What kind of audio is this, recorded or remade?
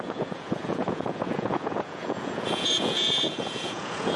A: remade